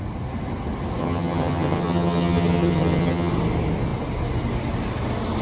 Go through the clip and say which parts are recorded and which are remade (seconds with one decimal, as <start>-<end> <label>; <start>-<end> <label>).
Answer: 0.0-1.0 recorded; 1.0-3.3 remade; 3.3-5.4 recorded